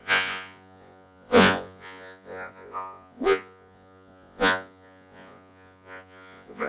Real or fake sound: fake